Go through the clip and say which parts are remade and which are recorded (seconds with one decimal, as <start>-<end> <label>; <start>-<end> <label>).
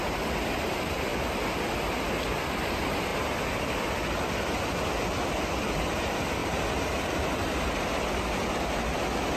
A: 0.0-1.1 recorded; 1.1-1.7 remade; 1.7-9.4 recorded